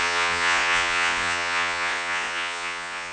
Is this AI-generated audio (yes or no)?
yes